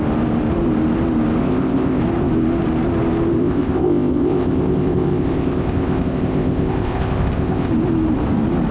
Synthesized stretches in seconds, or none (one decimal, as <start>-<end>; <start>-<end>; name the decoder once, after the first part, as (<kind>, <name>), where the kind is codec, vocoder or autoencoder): 1.4-2.0 (codec, ZipCodec); 3.4-7.7